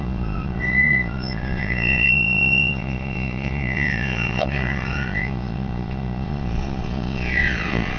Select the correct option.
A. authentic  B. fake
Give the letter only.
B